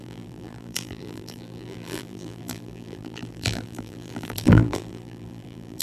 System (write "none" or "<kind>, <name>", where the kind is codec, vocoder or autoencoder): vocoder, BigVGAN v2